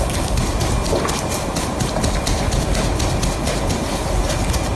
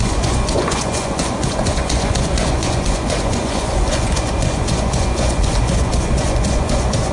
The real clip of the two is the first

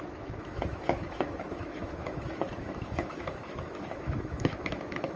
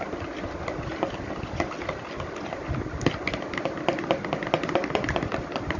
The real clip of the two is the second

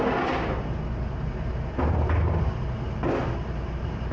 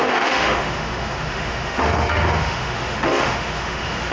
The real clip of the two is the first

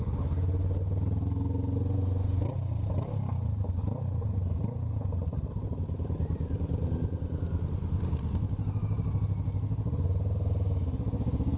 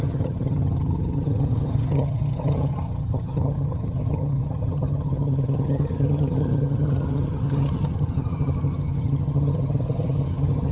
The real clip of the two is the first